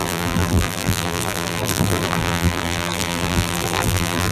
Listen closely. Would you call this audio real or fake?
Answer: fake